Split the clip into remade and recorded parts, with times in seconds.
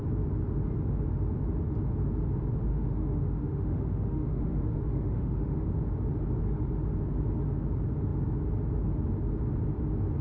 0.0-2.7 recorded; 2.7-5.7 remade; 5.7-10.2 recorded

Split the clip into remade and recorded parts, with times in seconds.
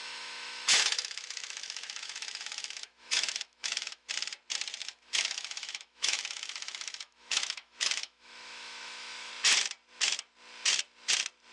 0.0-4.1 remade; 4.1-4.8 recorded; 4.8-9.3 remade; 9.3-11.5 recorded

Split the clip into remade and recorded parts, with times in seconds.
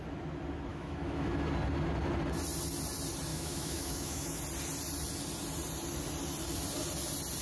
0.0-0.7 recorded; 0.7-1.3 remade; 1.3-3.3 recorded; 3.3-4.4 remade; 4.4-7.4 recorded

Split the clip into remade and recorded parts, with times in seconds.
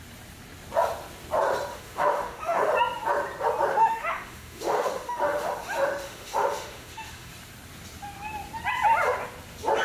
0.0-1.7 recorded; 1.7-2.7 remade; 2.7-3.7 recorded; 3.7-7.3 remade; 7.3-9.8 recorded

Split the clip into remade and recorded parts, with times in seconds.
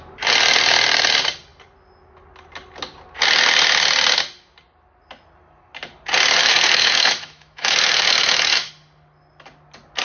0.0-6.4 recorded; 6.4-8.7 remade; 8.7-10.0 recorded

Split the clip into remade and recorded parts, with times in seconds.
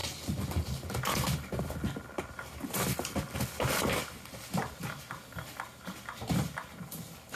0.0-7.4 recorded